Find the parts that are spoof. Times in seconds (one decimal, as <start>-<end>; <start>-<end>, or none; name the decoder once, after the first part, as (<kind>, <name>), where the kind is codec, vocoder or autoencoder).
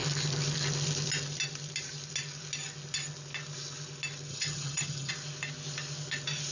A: 4.3-5.1 (vocoder, HiFi-GAN)